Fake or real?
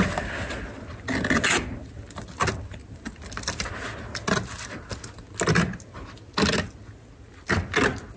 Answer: real